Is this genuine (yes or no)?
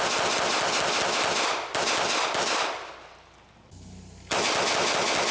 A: yes